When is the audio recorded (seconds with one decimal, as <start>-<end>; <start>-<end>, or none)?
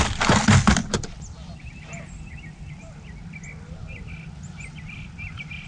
0.0-5.7